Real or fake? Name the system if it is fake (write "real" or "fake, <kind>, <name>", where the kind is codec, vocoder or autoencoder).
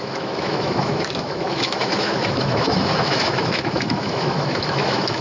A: fake, autoencoder, DAC-VAE